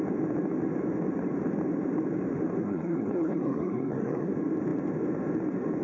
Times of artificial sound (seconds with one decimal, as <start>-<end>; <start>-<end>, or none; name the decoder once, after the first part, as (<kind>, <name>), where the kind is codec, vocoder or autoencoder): 2.6-4.3 (codec, SNAC)